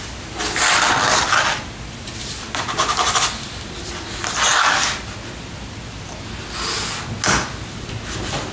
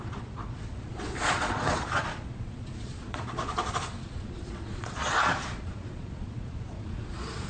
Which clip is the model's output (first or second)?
second